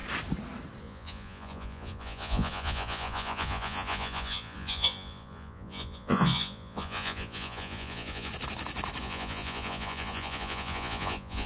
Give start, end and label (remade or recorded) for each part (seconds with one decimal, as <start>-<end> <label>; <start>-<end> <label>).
0.0-0.8 recorded; 0.8-8.3 remade; 8.3-9.0 recorded; 9.0-11.5 remade